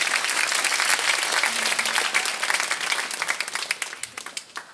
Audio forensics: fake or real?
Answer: real